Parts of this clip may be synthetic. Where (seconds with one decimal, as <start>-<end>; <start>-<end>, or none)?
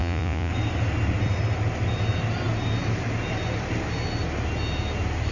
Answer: 0.0-0.5